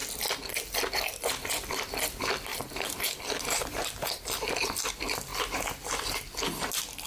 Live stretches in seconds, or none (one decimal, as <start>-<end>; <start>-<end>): 0.0-2.5; 4.2-7.1